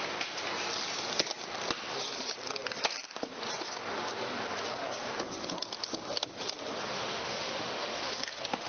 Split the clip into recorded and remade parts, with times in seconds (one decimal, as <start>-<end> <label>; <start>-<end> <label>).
0.0-6.9 recorded; 6.9-8.7 remade